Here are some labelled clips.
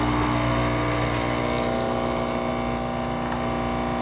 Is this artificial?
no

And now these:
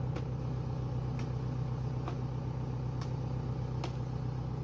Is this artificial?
no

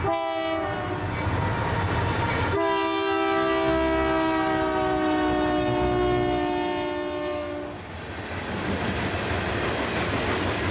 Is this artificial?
no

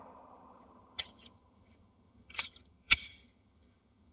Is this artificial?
yes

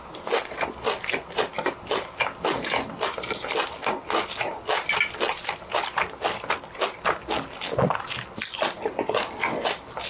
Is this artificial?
no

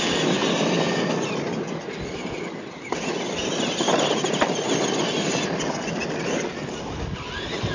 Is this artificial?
no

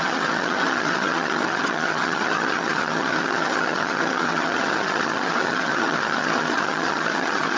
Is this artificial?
yes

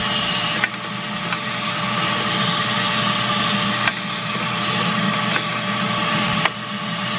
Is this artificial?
no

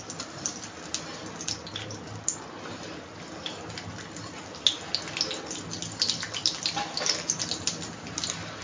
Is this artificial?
no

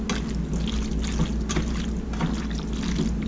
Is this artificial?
no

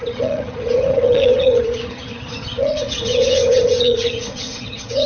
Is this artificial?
yes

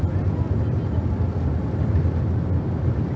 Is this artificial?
no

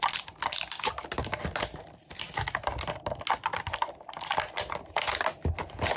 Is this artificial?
no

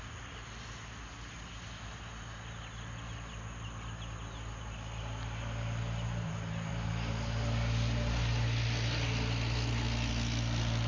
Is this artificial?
no